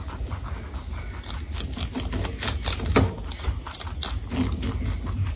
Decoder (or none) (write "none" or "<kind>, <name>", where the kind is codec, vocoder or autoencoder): none